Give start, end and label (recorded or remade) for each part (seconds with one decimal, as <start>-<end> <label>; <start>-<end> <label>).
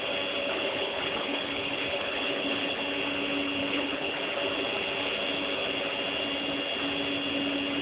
0.0-0.4 recorded; 0.4-2.8 remade; 2.8-3.6 recorded; 3.6-4.2 remade; 4.2-7.8 recorded